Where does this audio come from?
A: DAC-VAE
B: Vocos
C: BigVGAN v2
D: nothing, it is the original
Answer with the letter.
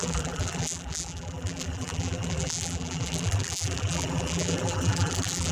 C